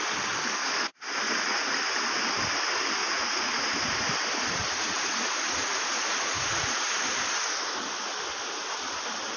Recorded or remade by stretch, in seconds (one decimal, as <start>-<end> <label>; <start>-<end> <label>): 0.0-0.6 recorded; 0.6-1.8 remade; 1.8-3.0 recorded; 3.0-4.1 remade; 4.1-4.6 recorded; 4.6-7.0 remade; 7.0-9.4 recorded